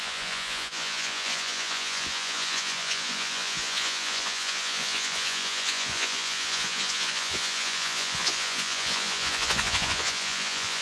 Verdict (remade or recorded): remade